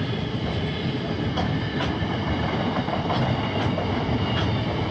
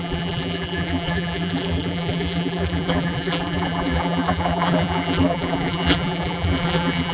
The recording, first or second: first